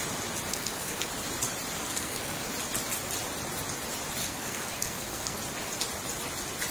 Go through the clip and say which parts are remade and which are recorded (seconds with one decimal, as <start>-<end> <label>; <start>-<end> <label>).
0.0-0.5 recorded; 0.5-1.1 remade; 1.1-1.8 recorded; 1.8-2.5 remade; 2.5-4.2 recorded; 4.2-5.4 remade; 5.4-6.7 recorded